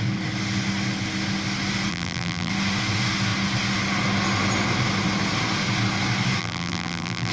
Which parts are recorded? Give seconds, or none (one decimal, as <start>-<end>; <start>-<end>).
0.0-1.9; 2.5-6.4